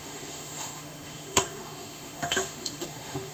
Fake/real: fake